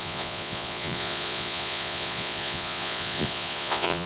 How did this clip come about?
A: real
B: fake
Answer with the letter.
B